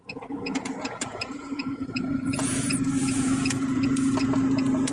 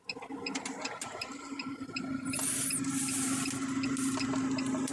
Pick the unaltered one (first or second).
second